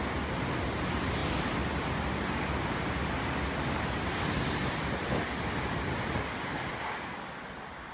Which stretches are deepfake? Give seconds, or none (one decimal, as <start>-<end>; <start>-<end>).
none